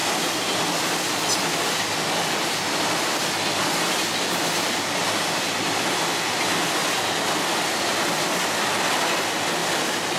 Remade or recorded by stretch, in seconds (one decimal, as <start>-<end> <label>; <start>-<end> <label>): 0.0-10.2 recorded